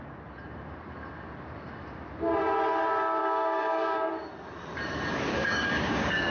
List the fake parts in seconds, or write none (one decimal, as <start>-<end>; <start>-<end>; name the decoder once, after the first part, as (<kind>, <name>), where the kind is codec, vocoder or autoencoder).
3.2-4.1 (codec, DAC); 5.3-6.3